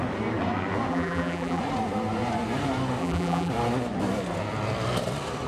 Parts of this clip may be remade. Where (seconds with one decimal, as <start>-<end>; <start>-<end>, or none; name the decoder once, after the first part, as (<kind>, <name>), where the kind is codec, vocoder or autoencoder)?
0.9-1.6 (vocoder, BigVGAN v2); 3.0-3.5